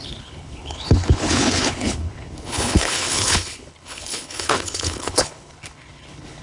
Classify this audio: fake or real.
fake